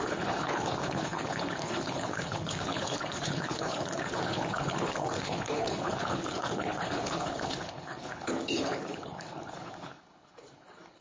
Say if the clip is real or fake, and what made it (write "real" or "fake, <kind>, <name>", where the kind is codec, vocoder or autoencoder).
fake, codec, HILCodec